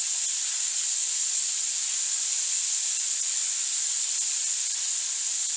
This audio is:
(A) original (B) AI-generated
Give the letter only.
A